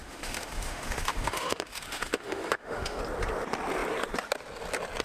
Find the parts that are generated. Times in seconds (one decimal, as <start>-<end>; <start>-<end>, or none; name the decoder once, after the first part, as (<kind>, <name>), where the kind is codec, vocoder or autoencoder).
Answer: 0.0-3.0 (autoencoder, DAC-VAE)